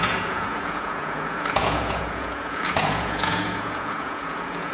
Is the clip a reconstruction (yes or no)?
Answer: yes